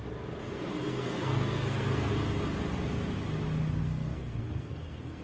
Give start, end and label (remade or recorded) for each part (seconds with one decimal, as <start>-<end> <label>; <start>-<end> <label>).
0.0-0.4 recorded; 0.4-2.1 remade; 2.1-3.8 recorded; 3.8-5.2 remade